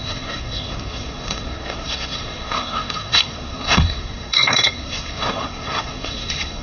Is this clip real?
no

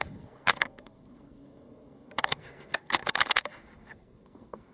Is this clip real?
no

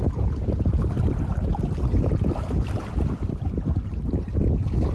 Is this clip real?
yes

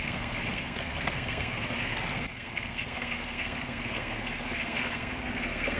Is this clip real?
no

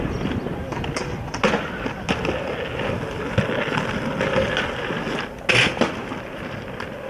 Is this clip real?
yes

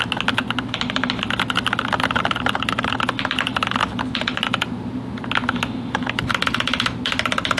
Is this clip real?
yes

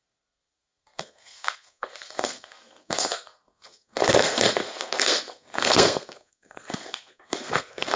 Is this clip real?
no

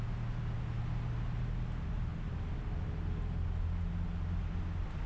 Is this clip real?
yes